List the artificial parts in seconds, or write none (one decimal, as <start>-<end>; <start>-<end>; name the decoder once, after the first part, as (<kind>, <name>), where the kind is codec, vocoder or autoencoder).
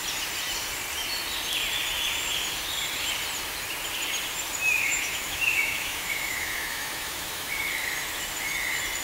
4.6-7.5 (autoencoder, DAC-VAE)